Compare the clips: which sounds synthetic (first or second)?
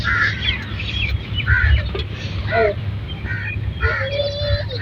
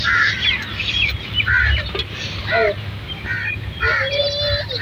first